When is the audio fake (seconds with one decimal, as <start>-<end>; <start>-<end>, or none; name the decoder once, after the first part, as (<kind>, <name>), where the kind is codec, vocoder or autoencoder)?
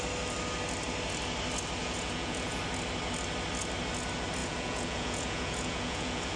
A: 1.8-2.6 (vocoder, Vocos); 4.4-6.4